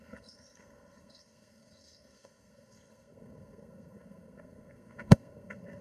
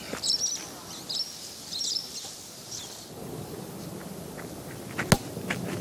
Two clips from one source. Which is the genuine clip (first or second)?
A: second